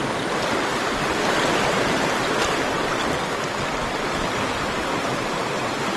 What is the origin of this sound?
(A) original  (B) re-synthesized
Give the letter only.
A